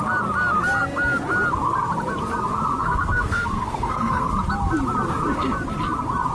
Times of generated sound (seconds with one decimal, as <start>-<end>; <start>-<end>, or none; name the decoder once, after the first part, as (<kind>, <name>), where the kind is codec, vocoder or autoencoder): 2.8-4.3 (codec, SNAC)